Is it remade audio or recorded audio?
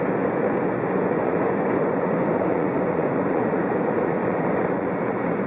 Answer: remade